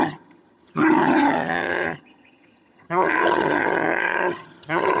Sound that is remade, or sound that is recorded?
remade